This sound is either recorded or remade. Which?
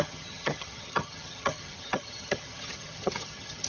remade